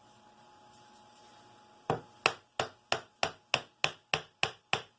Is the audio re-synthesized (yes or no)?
no